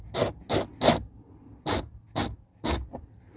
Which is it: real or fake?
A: real